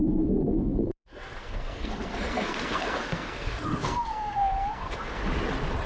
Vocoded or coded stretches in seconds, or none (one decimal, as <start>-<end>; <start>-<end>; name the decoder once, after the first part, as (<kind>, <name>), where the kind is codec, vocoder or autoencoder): 0.0-5.2 (codec, SNAC)